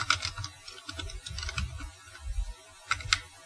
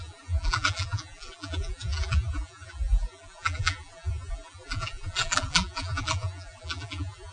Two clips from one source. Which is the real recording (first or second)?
first